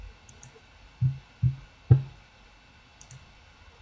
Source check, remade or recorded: recorded